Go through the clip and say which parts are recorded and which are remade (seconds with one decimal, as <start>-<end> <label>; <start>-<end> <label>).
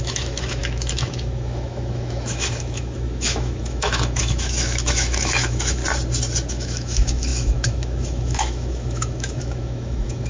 0.0-5.8 remade; 5.8-6.5 recorded; 6.5-10.3 remade